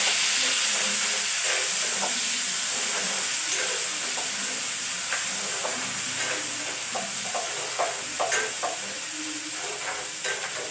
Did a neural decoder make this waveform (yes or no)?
no